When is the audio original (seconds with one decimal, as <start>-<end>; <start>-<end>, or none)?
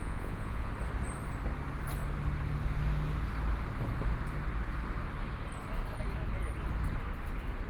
0.7-7.7